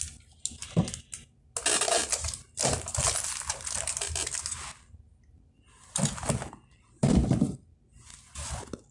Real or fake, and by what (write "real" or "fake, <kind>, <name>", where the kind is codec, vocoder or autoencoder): real